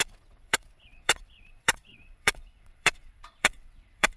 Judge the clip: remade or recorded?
remade